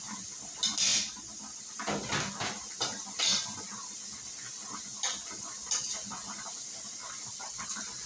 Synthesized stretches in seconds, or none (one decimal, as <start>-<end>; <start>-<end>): none